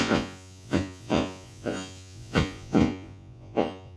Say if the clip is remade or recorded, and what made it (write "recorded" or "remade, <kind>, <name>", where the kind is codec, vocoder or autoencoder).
remade, vocoder, Vocos